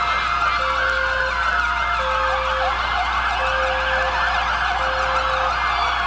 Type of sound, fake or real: real